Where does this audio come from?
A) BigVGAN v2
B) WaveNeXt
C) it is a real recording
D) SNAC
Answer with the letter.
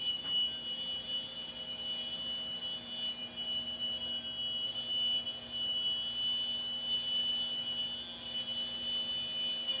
C